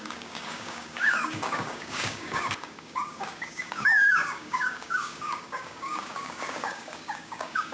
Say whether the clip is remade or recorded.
remade